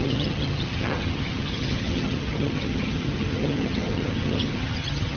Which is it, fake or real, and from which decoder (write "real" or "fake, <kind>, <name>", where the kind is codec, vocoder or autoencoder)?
fake, vocoder, HiFi-GAN